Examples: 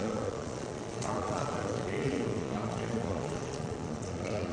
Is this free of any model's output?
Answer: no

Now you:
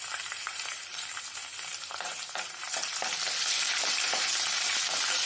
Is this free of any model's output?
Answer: no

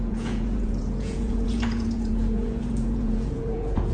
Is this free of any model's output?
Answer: no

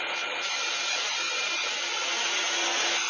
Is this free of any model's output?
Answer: yes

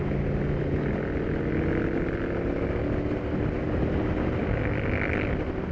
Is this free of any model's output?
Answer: yes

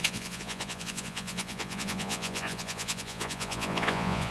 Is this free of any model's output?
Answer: no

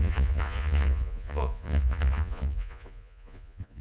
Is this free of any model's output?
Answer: no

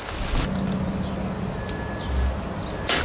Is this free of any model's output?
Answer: yes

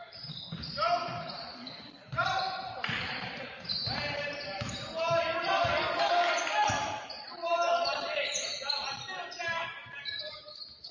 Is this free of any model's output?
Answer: no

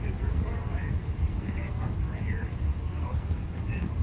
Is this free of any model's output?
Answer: no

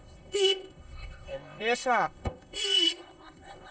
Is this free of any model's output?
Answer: no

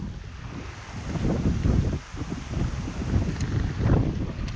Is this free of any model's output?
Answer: yes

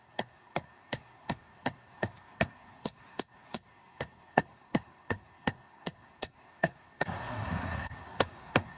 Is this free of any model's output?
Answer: no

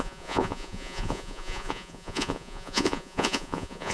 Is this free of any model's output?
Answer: no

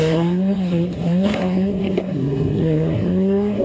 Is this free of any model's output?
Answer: no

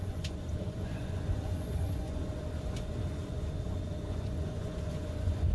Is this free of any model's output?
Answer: no